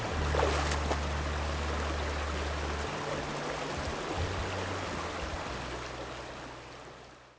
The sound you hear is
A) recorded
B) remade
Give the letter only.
A